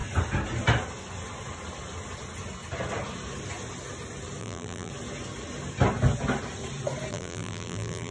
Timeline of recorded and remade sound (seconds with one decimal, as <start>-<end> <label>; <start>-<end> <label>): 0.0-4.4 recorded; 4.4-4.9 remade; 4.9-7.1 recorded; 7.1-8.1 remade

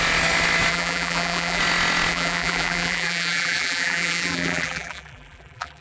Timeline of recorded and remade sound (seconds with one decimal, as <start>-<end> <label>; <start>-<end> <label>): 0.0-0.7 recorded; 0.7-1.6 remade; 1.6-2.1 recorded; 2.1-5.8 remade

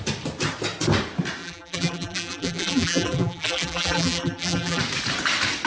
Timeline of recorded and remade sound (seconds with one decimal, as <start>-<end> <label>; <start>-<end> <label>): 0.0-1.4 recorded; 1.4-4.8 remade; 4.8-5.7 recorded